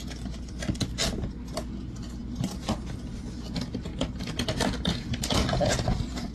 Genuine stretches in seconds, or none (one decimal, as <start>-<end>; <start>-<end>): 0.0-6.3